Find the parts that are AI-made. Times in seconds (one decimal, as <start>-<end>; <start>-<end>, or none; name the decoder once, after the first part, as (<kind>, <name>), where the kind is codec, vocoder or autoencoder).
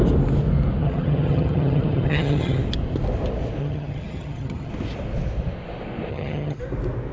0.8-2.6 (vocoder, HiFi-GAN); 3.6-4.7; 6.1-6.6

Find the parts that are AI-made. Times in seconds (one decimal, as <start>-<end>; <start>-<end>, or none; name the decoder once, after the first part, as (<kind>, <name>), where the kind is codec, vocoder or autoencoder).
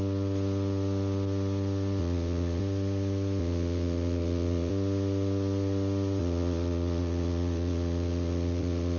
2.0-2.6 (vocoder, Vocos); 3.4-4.7; 6.2-9.0